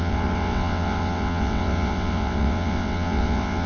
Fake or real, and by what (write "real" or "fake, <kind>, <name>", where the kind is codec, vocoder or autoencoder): fake, vocoder, WaveNeXt